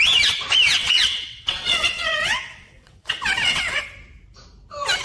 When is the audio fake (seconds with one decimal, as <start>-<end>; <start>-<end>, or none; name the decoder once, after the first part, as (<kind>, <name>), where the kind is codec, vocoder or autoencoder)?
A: 0.8-3.8 (vocoder, WaveNeXt)